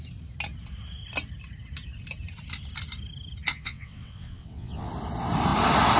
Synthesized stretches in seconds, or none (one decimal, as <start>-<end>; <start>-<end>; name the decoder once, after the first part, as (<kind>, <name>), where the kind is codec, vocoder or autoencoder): 3.5-4.9 (vocoder, WaveNeXt)